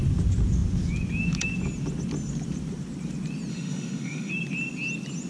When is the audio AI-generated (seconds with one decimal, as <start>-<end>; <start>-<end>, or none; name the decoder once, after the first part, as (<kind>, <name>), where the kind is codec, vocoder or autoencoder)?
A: 3.5-4.3 (autoencoder, DAC-VAE)